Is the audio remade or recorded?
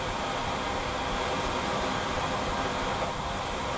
recorded